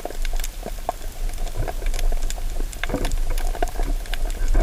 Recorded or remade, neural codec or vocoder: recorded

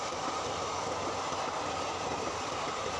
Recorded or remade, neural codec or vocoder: recorded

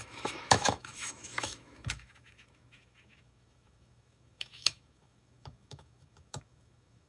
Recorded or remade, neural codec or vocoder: remade, autoencoder, DAC-VAE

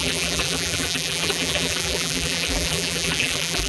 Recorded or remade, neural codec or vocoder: remade, vocoder, BigVGAN v2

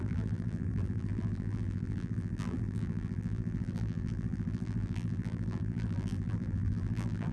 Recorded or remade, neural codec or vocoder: remade, vocoder, BigVGAN v2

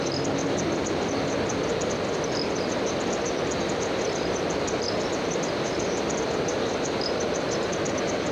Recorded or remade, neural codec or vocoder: recorded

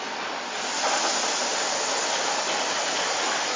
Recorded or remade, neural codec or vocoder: recorded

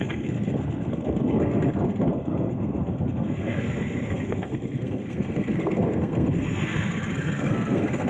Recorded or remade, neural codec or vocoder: remade, codec, SNAC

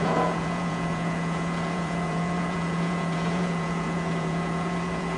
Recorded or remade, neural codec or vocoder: remade, vocoder, Vocos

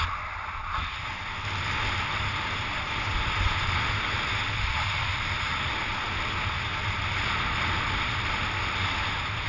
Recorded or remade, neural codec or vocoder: recorded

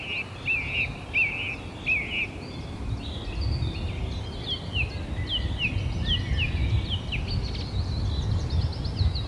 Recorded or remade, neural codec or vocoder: recorded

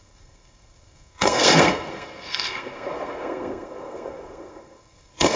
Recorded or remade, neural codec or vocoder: remade, codec, SNAC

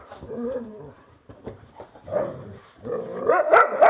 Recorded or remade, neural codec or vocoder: remade, vocoder, BigVGAN v2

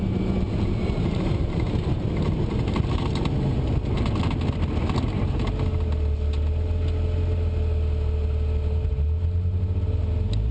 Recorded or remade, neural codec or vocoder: recorded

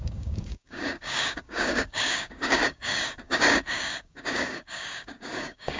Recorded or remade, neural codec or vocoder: remade, codec, DAC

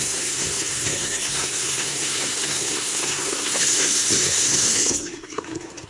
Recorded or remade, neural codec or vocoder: remade, codec, SNAC